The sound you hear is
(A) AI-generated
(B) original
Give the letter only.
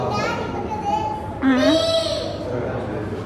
B